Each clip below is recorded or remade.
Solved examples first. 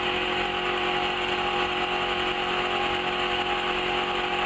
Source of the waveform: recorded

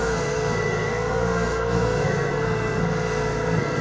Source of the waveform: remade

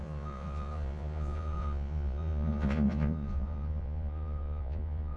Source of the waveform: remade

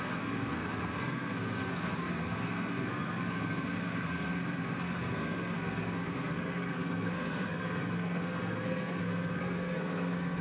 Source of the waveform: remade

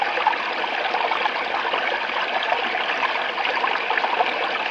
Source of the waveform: recorded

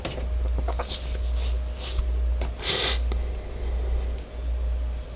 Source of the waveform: recorded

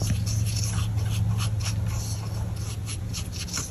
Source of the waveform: recorded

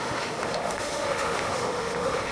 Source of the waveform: remade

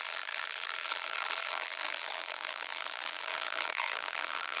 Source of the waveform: remade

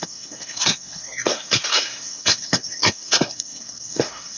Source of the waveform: remade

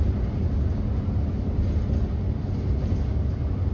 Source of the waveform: recorded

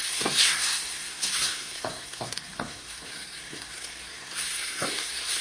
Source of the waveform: remade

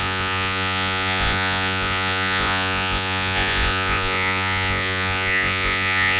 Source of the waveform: remade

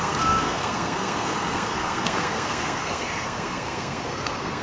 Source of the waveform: remade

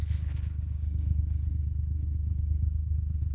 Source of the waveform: remade